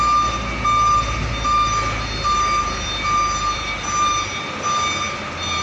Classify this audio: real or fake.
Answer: real